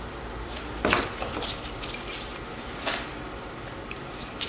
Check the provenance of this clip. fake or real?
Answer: real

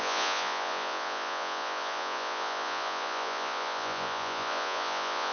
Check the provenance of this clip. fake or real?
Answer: fake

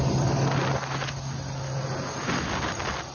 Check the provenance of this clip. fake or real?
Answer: real